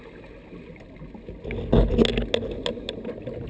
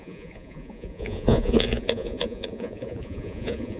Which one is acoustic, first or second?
first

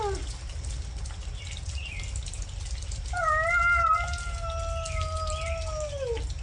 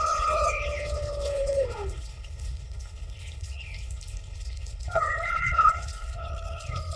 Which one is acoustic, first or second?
first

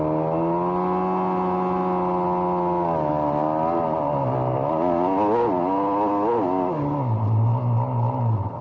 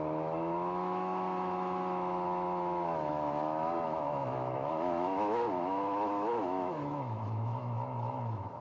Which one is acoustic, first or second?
first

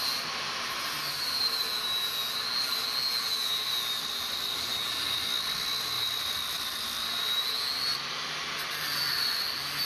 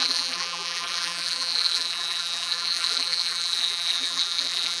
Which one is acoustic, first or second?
first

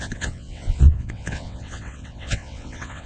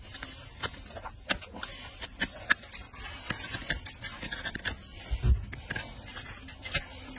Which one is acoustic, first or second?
second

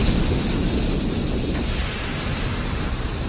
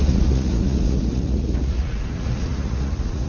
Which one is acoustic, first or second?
first